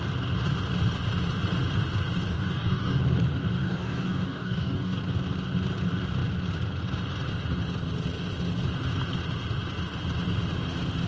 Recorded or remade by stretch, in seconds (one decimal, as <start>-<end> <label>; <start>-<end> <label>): 0.0-2.3 recorded; 2.3-3.0 remade; 3.0-3.6 recorded; 3.6-5.0 remade; 5.0-11.1 recorded